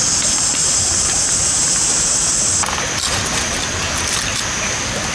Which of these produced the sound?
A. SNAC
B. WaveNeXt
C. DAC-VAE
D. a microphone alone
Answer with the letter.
D